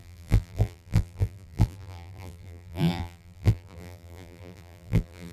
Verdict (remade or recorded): remade